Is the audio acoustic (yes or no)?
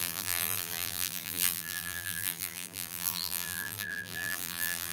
no